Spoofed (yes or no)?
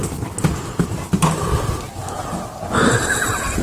no